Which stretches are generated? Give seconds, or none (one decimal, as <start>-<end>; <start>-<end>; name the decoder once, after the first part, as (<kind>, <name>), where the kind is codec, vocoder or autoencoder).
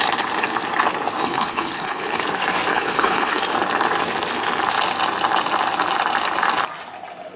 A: 1.2-2.2 (codec, HILCodec); 2.7-3.4